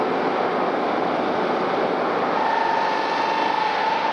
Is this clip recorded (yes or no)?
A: yes